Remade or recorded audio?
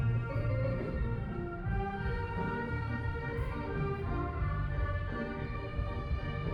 remade